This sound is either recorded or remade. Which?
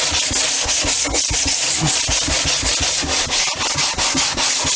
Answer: recorded